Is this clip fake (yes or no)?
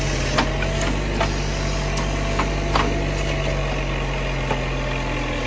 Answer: no